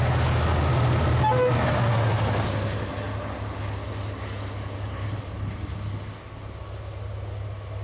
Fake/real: real